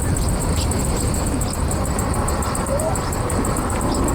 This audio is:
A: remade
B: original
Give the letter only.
A